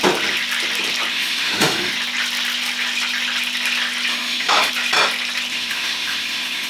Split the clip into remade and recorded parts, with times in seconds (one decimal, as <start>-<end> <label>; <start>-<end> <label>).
0.0-1.1 recorded; 1.1-1.9 remade; 1.9-4.1 recorded; 4.1-4.7 remade; 4.7-5.5 recorded; 5.5-6.7 remade

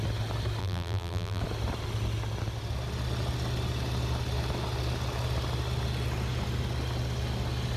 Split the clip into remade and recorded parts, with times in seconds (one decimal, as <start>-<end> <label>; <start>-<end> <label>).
0.0-0.6 recorded; 0.6-1.4 remade; 1.4-7.8 recorded

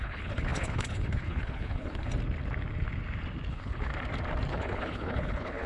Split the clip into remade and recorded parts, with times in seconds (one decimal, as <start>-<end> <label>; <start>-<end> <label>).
0.0-2.1 remade; 2.1-3.5 recorded; 3.5-3.9 remade; 3.9-4.5 recorded; 4.5-5.7 remade

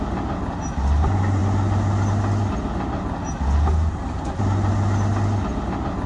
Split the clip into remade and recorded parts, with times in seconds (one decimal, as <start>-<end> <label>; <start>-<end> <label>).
0.0-6.1 recorded

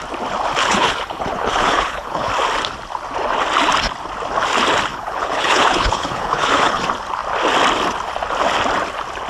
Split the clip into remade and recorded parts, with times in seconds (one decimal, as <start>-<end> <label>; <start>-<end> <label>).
0.0-0.6 recorded; 0.6-2.3 remade; 2.3-4.9 recorded; 4.9-6.8 remade; 6.8-9.3 recorded

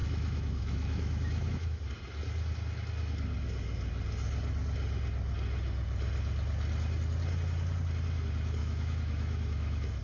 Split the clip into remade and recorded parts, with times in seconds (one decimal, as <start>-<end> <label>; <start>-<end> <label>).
0.0-1.8 remade; 1.8-8.6 recorded; 8.6-10.0 remade

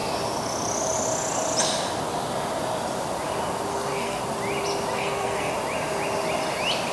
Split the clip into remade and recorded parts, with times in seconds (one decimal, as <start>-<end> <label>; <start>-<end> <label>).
0.0-3.7 recorded; 3.7-4.2 remade; 4.2-4.9 recorded; 4.9-5.5 remade; 5.5-6.9 recorded